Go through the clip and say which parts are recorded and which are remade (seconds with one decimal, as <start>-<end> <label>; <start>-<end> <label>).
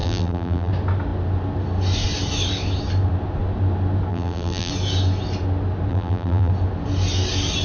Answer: 0.0-0.7 remade; 0.7-4.1 recorded; 4.1-4.7 remade; 4.7-5.9 recorded; 5.9-6.5 remade; 6.5-7.6 recorded